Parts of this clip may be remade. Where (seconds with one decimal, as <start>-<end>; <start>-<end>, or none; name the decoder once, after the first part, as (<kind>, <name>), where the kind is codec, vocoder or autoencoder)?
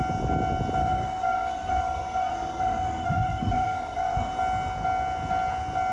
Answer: 0.8-4.3 (codec, SNAC)